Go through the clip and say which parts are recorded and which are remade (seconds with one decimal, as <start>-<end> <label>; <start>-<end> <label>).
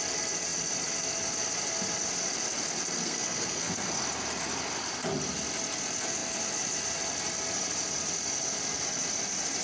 0.0-3.0 recorded; 3.0-3.7 remade; 3.7-9.6 recorded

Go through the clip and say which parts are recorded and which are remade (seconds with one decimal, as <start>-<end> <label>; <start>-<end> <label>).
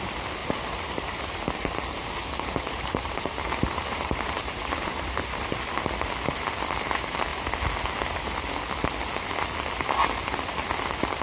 0.0-0.4 recorded; 0.4-5.4 remade; 5.4-11.2 recorded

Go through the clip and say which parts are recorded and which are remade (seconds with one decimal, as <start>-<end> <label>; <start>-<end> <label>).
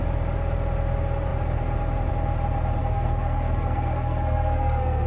0.0-2.8 recorded; 2.8-5.1 remade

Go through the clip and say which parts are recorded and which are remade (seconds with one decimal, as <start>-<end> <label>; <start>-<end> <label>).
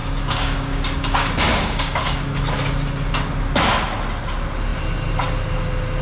0.0-2.4 remade; 2.4-6.0 recorded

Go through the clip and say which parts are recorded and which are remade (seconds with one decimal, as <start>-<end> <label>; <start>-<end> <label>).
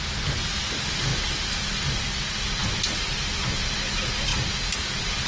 0.0-5.3 recorded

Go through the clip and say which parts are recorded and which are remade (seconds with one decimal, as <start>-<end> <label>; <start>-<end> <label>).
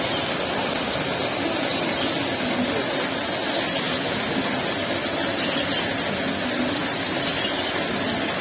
0.0-8.4 recorded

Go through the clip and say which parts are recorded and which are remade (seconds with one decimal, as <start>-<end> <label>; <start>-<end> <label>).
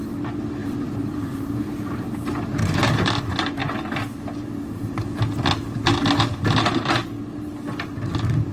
0.0-0.6 recorded; 0.6-3.2 remade; 3.2-8.5 recorded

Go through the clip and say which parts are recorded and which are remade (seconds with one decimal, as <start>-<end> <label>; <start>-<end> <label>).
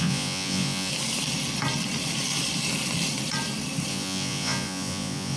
0.0-0.9 remade; 0.9-3.9 recorded; 3.9-5.4 remade